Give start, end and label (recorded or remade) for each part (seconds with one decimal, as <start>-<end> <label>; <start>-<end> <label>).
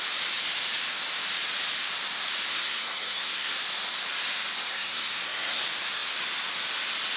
0.0-2.5 recorded; 2.5-3.5 remade; 3.5-4.7 recorded; 4.7-5.6 remade; 5.6-7.2 recorded